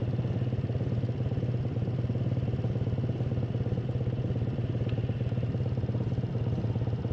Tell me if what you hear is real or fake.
real